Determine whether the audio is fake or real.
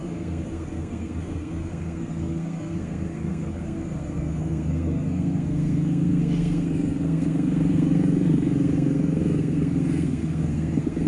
fake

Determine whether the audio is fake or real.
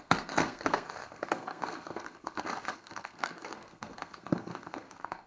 fake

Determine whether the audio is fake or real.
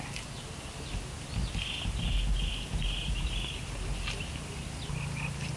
real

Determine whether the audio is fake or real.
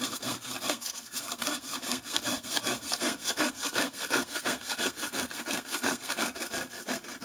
fake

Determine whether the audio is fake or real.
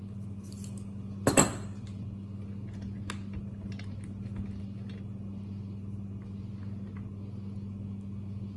real